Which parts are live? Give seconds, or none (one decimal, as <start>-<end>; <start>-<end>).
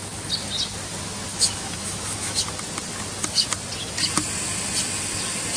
0.0-1.3; 2.4-5.6